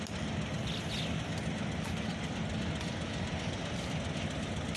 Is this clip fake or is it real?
real